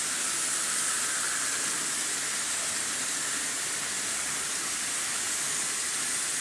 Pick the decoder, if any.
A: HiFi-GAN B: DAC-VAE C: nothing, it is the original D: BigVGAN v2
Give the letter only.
C